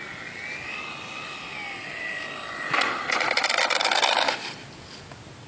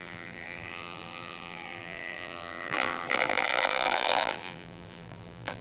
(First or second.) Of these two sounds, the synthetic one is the second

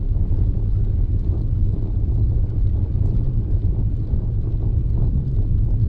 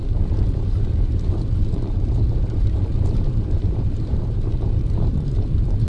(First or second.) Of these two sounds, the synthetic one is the second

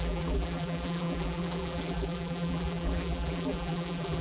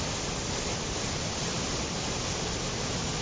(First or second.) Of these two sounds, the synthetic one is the first